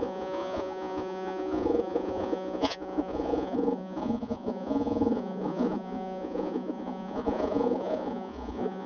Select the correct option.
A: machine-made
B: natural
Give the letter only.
A